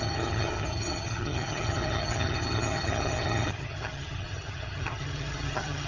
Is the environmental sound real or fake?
fake